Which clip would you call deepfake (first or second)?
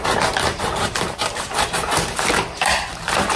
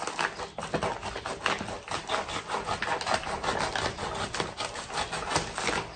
first